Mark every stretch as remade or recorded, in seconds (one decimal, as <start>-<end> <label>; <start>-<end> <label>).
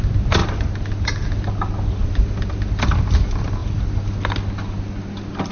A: 0.0-5.5 recorded